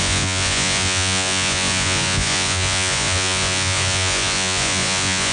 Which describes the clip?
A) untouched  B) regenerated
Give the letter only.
B